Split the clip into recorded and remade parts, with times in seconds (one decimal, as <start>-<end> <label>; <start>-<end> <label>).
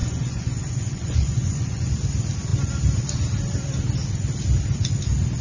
0.0-1.9 remade; 1.9-5.4 recorded